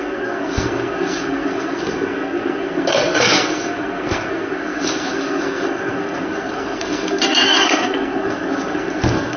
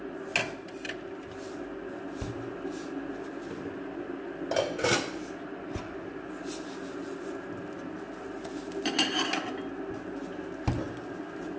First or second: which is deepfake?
first